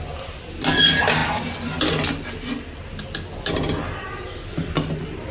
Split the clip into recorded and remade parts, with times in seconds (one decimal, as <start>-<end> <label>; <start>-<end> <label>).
0.0-5.3 recorded